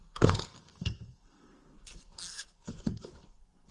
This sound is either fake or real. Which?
fake